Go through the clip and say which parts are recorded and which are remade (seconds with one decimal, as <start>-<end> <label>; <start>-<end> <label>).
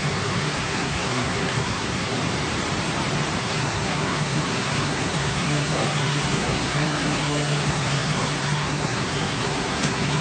0.0-2.2 remade; 2.2-3.4 recorded; 3.4-10.2 remade